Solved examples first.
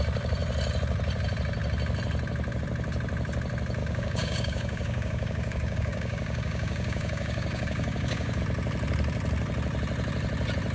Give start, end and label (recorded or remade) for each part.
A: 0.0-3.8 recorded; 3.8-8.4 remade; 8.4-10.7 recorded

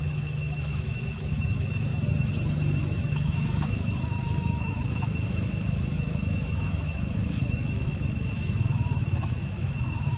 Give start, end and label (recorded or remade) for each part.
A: 0.0-1.9 remade; 1.9-2.8 recorded; 2.8-10.2 remade

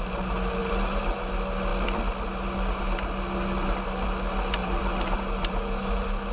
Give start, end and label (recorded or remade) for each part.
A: 0.0-0.6 recorded; 0.6-1.2 remade; 1.2-4.6 recorded; 4.6-6.3 remade

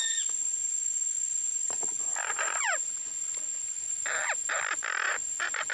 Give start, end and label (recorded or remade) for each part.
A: 0.0-1.6 recorded; 1.6-3.9 remade; 3.9-5.1 recorded; 5.1-5.7 remade